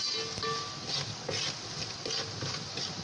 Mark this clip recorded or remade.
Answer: recorded